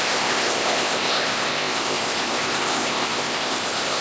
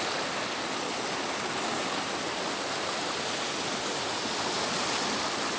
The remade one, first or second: first